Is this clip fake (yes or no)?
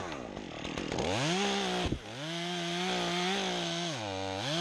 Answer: no